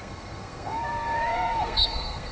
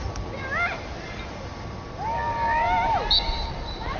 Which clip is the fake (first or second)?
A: first